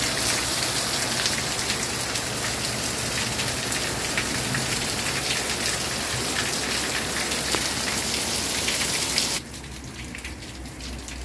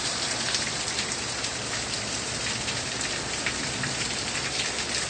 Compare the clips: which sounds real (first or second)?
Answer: first